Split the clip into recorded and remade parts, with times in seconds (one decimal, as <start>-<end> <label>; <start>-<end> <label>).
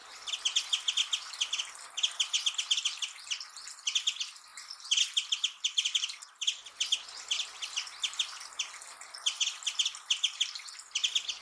0.0-11.4 recorded